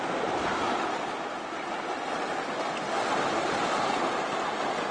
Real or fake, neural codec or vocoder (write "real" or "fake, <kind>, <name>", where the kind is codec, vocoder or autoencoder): real